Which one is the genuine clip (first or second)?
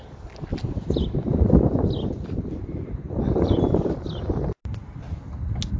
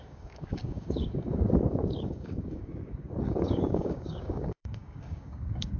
first